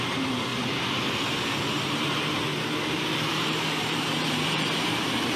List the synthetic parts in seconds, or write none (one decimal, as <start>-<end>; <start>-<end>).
0.0-0.5; 1.6-2.5; 3.3-5.4